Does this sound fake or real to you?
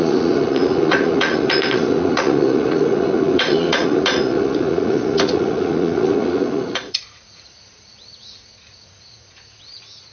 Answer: fake